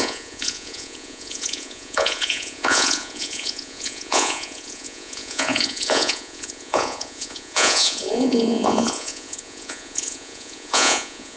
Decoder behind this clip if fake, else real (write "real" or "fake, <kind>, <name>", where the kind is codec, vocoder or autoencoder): fake, vocoder, Vocos